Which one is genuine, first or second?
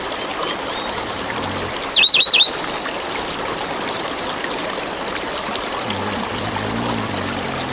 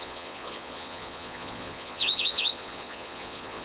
first